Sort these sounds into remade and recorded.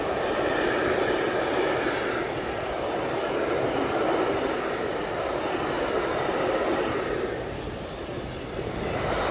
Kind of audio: recorded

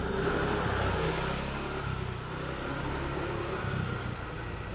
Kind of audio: recorded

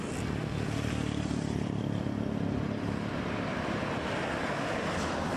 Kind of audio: remade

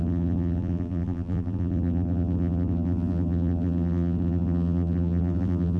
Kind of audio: remade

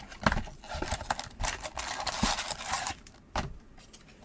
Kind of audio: recorded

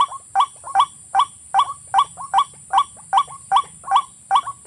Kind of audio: recorded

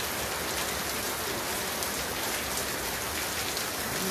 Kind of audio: recorded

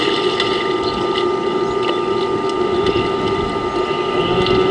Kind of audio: recorded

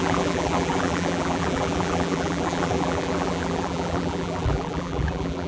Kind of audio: remade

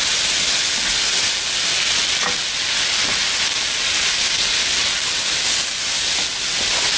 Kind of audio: recorded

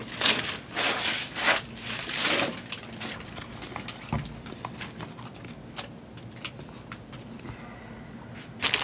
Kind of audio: recorded